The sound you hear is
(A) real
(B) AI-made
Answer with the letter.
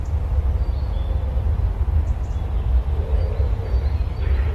A